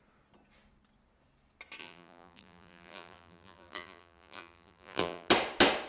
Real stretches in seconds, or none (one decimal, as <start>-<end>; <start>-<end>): 0.0-1.8; 5.3-5.9